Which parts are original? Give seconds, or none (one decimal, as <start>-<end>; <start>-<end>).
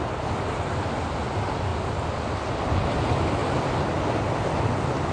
0.0-3.4; 4.4-5.1